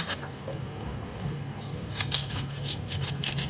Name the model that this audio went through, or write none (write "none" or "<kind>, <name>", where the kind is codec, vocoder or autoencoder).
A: codec, DAC